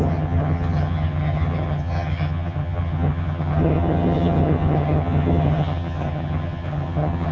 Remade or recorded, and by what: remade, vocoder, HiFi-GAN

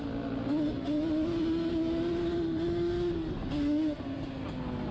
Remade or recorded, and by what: recorded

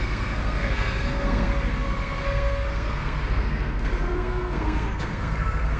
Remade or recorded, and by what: remade, codec, SNAC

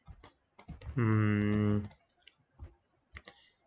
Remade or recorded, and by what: recorded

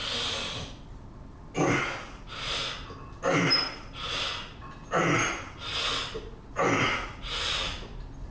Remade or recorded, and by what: recorded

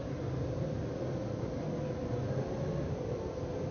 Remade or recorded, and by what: recorded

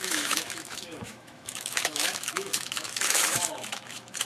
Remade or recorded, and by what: remade, autoencoder, DAC-VAE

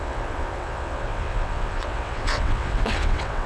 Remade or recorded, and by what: remade, vocoder, WaveNeXt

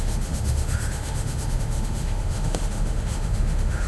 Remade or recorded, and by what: remade, autoencoder, DAC-VAE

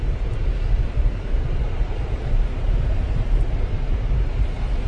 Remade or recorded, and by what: remade, vocoder, BigVGAN v2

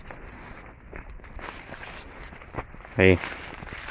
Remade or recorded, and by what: recorded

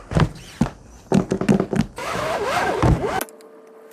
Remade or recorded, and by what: recorded